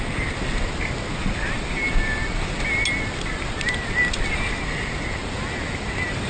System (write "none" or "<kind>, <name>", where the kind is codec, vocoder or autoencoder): none